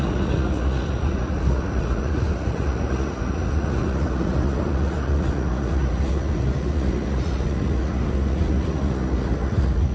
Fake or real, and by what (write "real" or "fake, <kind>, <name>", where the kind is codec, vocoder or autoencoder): fake, vocoder, Vocos